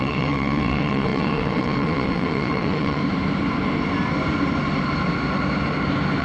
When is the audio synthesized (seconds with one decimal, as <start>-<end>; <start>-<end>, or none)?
0.0-3.0